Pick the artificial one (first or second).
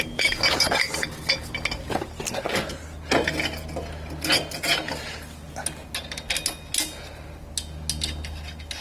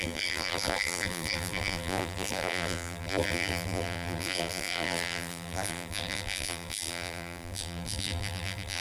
second